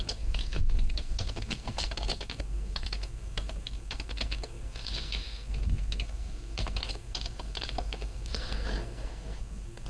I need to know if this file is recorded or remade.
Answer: remade